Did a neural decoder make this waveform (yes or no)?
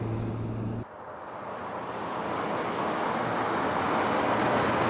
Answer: no